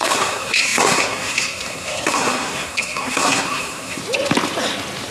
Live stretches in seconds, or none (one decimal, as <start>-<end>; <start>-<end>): 4.0-5.1